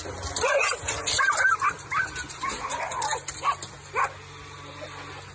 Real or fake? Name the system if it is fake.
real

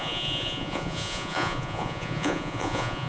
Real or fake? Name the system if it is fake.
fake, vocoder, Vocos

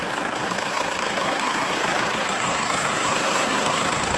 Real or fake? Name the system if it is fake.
fake, codec, SNAC